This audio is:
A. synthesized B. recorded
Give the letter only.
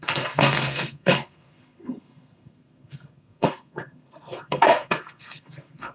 A